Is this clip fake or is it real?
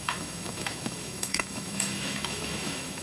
fake